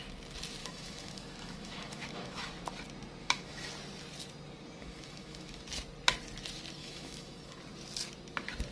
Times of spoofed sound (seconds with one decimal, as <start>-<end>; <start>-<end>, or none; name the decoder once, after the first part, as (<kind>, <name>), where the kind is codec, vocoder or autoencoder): 0.6-2.5 (autoencoder, DAC-VAE); 3.2-3.7; 4.8-5.6; 6.8-7.6